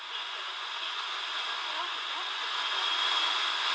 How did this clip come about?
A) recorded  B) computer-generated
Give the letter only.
B